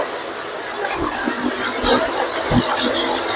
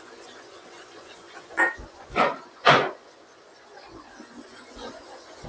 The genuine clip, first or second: first